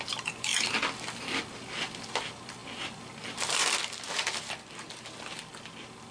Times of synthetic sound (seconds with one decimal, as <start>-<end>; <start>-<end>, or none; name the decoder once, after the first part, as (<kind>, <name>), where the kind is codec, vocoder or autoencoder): none

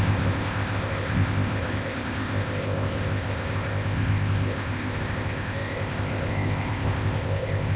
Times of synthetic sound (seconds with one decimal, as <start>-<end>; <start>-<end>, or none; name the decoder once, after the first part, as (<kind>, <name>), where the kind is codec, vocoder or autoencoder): 0.0-7.8 (codec, ZipCodec)

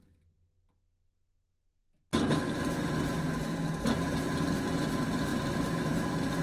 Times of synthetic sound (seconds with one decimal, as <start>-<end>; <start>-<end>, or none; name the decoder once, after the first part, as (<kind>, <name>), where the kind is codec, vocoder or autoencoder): none

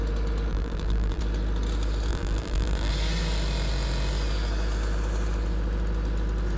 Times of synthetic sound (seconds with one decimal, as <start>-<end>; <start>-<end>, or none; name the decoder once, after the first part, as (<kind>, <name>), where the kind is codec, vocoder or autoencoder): 0.5-1.2 (vocoder, BigVGAN v2); 2.1-2.9

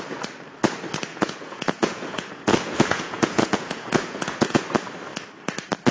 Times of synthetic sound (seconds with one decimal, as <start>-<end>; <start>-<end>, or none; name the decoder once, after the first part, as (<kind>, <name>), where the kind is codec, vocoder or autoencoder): 1.1-4.6 (vocoder, Vocos)

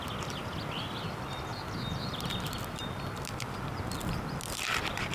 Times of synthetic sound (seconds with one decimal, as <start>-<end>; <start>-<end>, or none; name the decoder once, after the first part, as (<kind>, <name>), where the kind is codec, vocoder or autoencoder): none